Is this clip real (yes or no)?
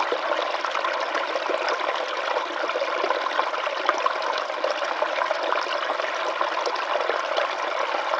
yes